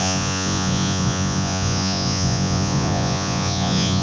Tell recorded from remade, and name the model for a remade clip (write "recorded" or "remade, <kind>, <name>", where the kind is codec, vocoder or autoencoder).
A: remade, vocoder, Vocos